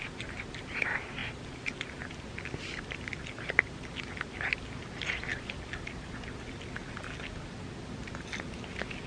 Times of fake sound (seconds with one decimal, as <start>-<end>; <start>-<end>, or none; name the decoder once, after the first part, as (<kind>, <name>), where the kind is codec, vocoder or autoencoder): none